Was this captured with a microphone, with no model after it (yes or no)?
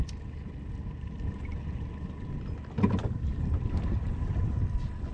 yes